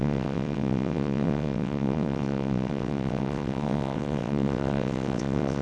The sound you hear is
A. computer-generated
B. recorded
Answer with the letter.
A